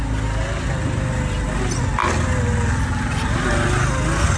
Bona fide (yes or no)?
yes